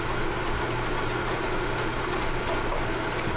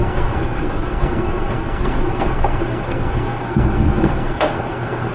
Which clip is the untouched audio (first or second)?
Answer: first